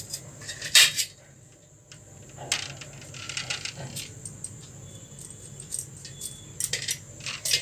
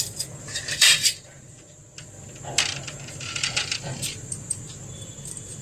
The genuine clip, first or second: first